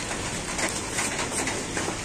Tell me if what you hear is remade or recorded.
recorded